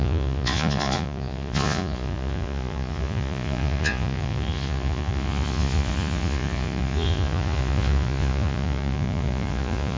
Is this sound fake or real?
fake